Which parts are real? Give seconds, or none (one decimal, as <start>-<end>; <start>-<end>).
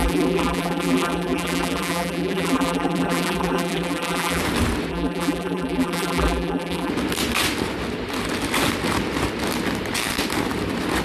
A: 4.4-4.9; 6.9-11.0